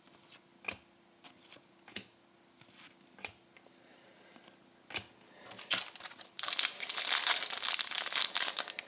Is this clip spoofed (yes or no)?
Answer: no